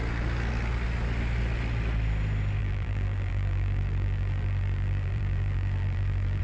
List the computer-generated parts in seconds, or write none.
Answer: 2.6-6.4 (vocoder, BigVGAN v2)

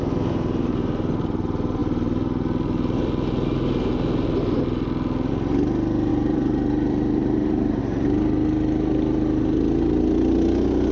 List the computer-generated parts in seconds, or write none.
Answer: 6.1-7.8 (vocoder, BigVGAN v2)

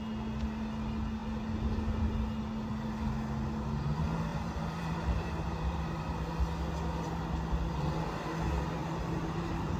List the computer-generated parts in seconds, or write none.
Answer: 4.3-6.0 (vocoder, BigVGAN v2); 8.8-9.8

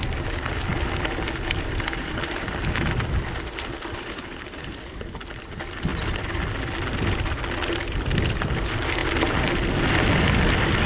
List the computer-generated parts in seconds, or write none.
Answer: 0.7-5.2 (vocoder, BigVGAN v2); 5.9-6.6